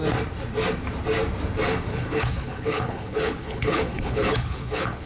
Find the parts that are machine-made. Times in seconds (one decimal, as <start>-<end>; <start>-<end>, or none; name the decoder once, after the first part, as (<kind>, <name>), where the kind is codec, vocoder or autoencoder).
1.9-5.1 (codec, HILCodec)